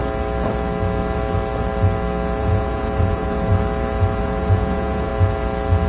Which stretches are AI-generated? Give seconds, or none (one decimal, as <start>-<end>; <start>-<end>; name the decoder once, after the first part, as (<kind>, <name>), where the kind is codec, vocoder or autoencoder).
2.4-3.5 (vocoder, Vocos); 4.2-5.1